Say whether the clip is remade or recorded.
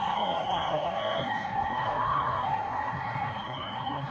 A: remade